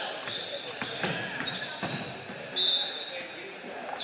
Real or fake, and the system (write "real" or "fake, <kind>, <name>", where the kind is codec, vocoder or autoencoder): real